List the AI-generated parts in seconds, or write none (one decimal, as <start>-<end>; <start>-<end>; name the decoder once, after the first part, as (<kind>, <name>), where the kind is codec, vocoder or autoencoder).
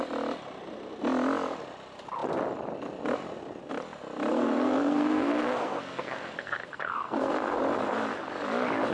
4.3-7.6 (codec, SNAC)